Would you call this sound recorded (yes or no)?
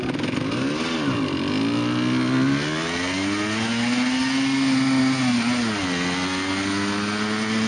yes